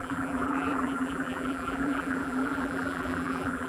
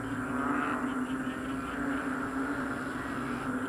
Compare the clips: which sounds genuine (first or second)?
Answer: second